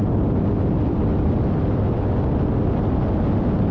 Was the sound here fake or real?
real